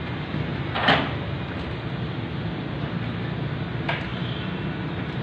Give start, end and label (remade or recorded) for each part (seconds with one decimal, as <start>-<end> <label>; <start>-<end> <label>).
0.0-5.2 recorded